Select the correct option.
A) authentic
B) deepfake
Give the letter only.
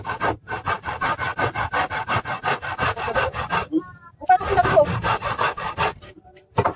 B